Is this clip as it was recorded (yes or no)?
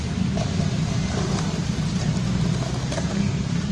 yes